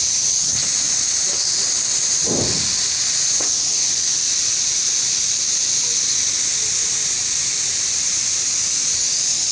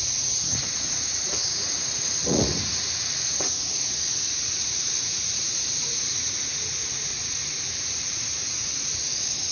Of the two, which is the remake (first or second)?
second